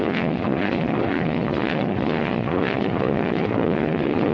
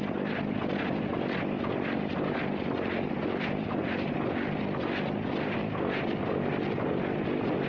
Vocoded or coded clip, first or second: first